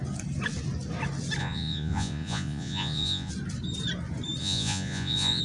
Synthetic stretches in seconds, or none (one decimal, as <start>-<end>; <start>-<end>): 1.4-3.3; 4.4-5.4